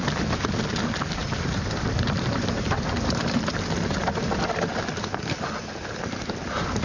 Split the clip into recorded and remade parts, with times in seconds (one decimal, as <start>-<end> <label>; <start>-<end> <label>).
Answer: 0.0-1.2 recorded; 1.2-3.5 remade; 3.5-6.8 recorded

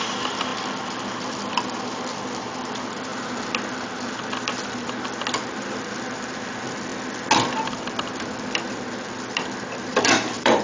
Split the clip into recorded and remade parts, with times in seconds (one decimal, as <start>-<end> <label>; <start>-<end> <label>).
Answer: 0.0-3.1 remade; 3.1-4.2 recorded; 4.2-6.9 remade; 6.9-9.1 recorded; 9.1-10.6 remade

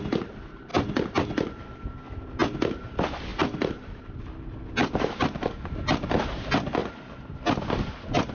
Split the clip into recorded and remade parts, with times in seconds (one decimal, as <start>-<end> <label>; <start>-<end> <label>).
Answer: 0.0-3.3 recorded; 3.3-4.1 remade; 4.1-4.8 recorded; 4.8-5.5 remade; 5.5-8.3 recorded

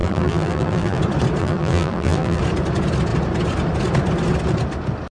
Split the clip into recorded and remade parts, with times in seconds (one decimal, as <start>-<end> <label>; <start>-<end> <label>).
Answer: 0.0-1.0 remade; 1.0-1.4 recorded; 1.4-2.4 remade; 2.4-5.1 recorded

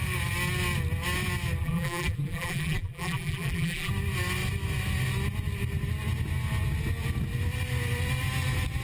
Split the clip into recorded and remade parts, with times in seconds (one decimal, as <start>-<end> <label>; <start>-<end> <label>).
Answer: 0.0-1.6 recorded; 1.6-3.9 remade; 3.9-8.8 recorded

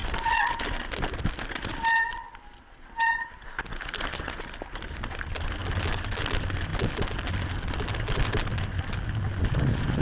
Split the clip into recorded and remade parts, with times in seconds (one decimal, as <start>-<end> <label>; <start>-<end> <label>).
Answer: 0.0-10.0 recorded

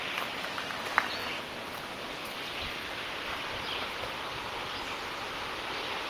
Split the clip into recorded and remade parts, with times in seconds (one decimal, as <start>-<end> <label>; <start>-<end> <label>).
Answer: 0.0-1.2 remade; 1.2-1.9 recorded; 1.9-6.1 remade